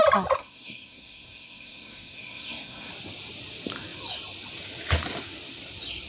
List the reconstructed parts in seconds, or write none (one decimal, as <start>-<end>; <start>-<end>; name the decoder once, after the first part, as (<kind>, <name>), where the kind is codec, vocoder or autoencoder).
0.4-2.9 (codec, SNAC)